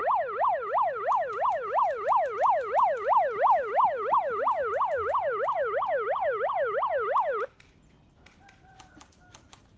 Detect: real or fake real